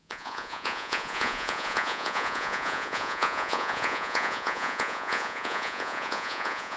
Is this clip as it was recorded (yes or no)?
no